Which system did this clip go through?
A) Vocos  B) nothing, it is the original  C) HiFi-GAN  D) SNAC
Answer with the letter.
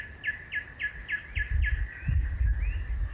B